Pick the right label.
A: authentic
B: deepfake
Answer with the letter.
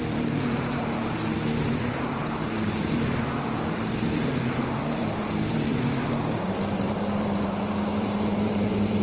B